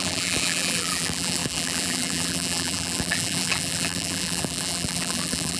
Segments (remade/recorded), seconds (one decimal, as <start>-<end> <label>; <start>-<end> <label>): 0.0-5.6 remade